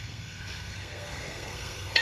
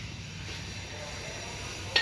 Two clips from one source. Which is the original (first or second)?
second